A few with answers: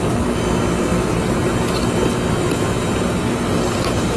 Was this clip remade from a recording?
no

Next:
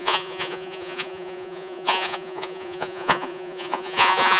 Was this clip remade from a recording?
yes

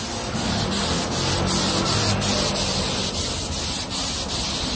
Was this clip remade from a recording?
no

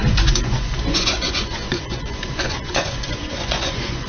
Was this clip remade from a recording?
yes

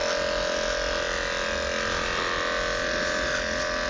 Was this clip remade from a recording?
no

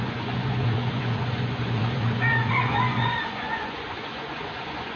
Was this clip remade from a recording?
yes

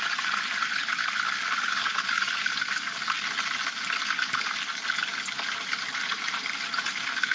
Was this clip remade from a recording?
no